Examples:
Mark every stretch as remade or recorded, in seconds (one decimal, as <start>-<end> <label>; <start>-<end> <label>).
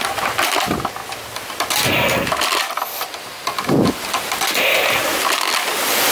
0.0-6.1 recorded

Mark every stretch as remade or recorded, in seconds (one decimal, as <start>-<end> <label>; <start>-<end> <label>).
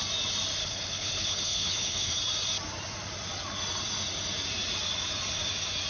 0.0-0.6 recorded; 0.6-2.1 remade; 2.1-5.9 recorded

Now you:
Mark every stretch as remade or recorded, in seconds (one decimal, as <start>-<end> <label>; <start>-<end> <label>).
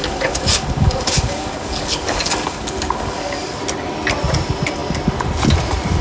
0.0-3.6 remade; 3.6-6.0 recorded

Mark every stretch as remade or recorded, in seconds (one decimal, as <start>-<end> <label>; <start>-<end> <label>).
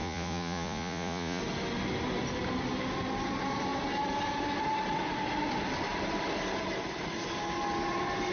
0.0-1.4 remade; 1.4-8.3 recorded